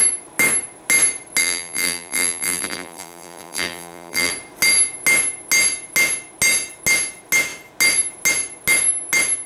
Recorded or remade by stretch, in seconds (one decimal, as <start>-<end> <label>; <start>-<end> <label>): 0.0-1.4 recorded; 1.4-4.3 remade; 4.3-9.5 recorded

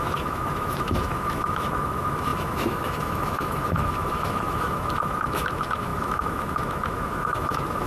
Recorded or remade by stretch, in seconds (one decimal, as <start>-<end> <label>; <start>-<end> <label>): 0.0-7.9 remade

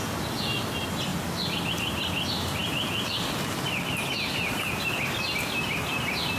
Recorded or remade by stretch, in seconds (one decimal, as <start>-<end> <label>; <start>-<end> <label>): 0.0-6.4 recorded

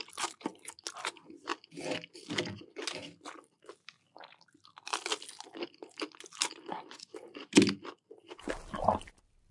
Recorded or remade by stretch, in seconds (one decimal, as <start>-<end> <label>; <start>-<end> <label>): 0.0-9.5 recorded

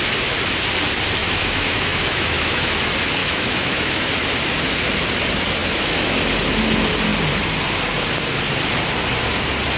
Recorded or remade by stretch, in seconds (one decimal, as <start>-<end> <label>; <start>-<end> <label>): 0.0-1.2 recorded; 1.2-2.7 remade; 2.7-3.2 recorded; 3.2-4.1 remade; 4.1-9.8 recorded

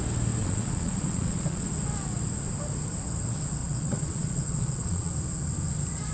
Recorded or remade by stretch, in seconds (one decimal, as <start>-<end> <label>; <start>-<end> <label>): 0.0-0.4 recorded; 0.4-1.7 remade; 1.7-3.6 recorded; 3.6-5.1 remade; 5.1-6.1 recorded

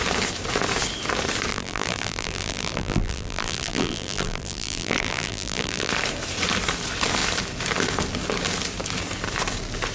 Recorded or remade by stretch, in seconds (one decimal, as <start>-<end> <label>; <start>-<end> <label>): 0.0-1.5 recorded; 1.5-5.9 remade; 5.9-9.9 recorded

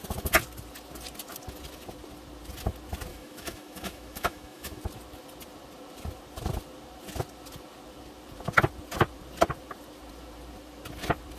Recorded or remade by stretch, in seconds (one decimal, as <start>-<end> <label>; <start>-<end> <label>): 0.0-3.1 recorded; 3.1-4.8 remade; 4.8-11.4 recorded